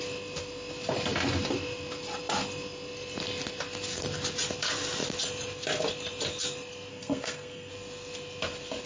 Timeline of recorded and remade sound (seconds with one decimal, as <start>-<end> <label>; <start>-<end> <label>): 0.0-6.9 recorded; 6.9-7.7 remade; 7.7-8.9 recorded